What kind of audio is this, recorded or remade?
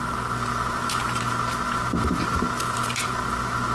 recorded